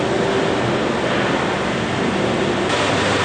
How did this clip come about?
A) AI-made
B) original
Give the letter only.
B